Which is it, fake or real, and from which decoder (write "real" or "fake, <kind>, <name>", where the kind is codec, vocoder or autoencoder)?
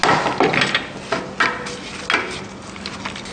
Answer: real